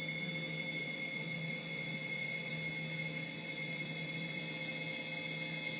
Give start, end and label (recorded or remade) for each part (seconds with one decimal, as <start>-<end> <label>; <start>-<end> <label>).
0.0-0.8 recorded; 0.8-2.5 remade; 2.5-3.2 recorded; 3.2-4.4 remade; 4.4-5.8 recorded